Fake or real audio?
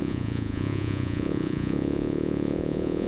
fake